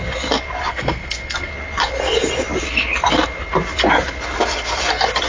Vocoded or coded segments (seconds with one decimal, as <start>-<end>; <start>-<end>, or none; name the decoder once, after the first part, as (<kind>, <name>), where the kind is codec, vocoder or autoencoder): 0.7-1.5 (codec, SNAC)